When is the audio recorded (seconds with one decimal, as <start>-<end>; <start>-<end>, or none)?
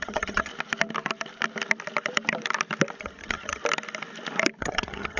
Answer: 0.5-3.0; 3.6-4.6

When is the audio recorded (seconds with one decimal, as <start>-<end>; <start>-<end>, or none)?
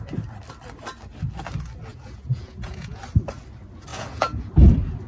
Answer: 0.0-1.9; 3.0-3.9; 4.5-5.1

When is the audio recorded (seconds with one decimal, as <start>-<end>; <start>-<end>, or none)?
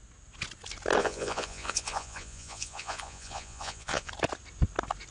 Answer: 0.0-1.0; 4.1-5.1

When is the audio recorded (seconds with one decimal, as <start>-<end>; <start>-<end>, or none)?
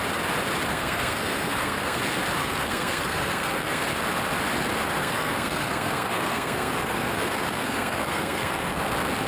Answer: 0.0-0.7; 2.0-2.4; 3.8-5.0; 8.8-9.3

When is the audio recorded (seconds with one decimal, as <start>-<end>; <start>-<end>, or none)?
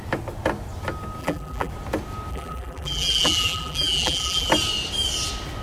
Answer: 0.0-1.2; 1.7-2.3; 4.5-5.6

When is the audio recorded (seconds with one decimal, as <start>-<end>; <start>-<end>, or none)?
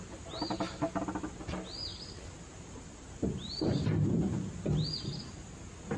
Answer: 0.0-1.9; 4.6-6.0